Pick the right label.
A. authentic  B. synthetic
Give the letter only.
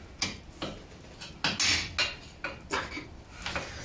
A